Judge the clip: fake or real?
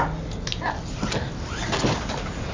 real